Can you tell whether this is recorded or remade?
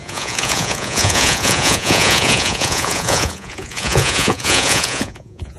remade